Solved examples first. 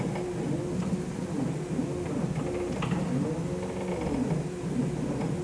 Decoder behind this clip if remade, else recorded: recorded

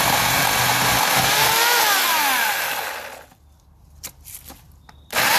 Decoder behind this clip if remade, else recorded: recorded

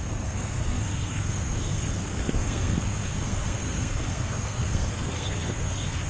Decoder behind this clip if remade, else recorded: remade, codec, SNAC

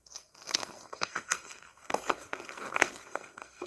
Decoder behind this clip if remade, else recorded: remade, codec, SNAC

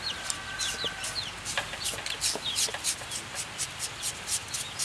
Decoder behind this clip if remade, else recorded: recorded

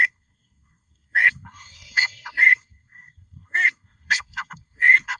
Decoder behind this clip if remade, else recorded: remade, codec, SNAC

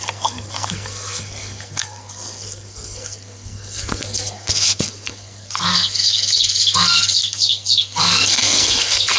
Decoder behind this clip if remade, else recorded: remade, codec, SNAC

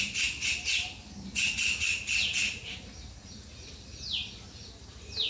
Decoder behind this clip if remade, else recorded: recorded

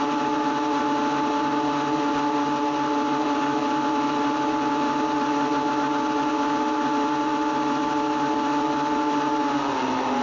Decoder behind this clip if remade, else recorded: recorded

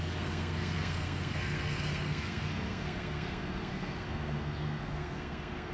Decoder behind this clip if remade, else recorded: remade, codec, SNAC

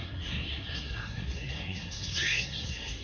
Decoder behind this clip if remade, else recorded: remade, codec, SNAC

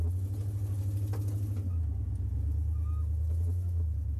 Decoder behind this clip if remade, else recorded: recorded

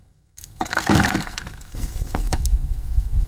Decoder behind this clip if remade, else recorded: remade, codec, SNAC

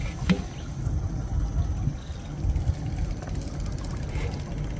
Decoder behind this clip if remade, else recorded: recorded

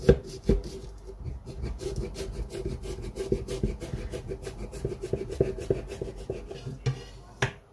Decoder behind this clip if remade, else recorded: recorded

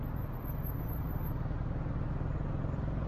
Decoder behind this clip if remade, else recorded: recorded